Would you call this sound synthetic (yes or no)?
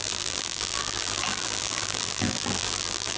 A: yes